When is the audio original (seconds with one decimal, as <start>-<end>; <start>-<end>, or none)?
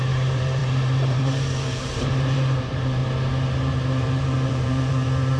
3.0-3.7